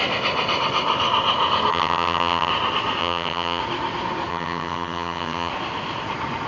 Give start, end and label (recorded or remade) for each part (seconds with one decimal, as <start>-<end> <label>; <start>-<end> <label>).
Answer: 0.0-1.7 recorded; 1.7-2.5 remade; 2.5-3.0 recorded; 3.0-3.6 remade; 3.6-4.3 recorded; 4.3-5.5 remade; 5.5-6.5 recorded